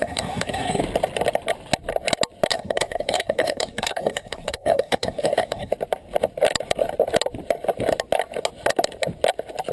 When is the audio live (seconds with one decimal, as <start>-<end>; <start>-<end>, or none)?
0.8-2.5; 5.7-9.7